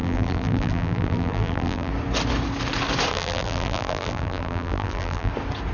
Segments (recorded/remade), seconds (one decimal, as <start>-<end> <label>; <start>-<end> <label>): 0.0-1.9 remade; 1.9-3.1 recorded; 3.1-5.3 remade; 5.3-5.7 recorded